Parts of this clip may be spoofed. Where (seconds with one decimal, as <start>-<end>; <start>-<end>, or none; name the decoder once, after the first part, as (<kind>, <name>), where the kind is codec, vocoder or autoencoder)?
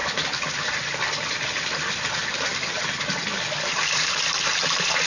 0.0-5.1 (vocoder, BigVGAN v2)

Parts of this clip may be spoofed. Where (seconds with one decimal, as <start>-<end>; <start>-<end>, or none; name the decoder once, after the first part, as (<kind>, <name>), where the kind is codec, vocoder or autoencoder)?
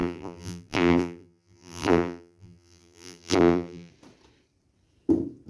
0.0-3.9 (vocoder, BigVGAN v2)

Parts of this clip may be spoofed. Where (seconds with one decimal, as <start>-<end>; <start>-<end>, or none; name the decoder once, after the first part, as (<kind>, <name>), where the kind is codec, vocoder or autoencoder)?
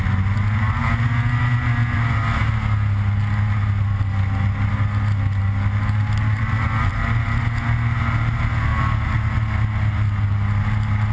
none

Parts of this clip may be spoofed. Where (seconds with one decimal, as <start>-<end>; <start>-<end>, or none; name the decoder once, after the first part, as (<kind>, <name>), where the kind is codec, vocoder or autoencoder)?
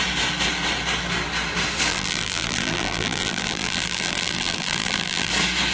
1.9-5.3 (vocoder, BigVGAN v2)